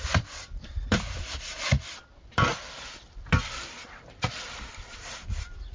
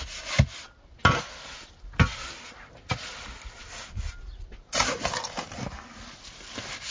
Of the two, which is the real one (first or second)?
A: second